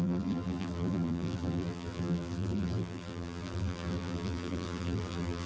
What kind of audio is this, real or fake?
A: fake